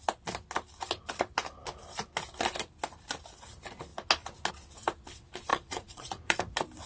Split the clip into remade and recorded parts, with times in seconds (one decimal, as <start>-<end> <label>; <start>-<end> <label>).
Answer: 0.0-5.5 recorded; 5.5-6.4 remade; 6.4-6.9 recorded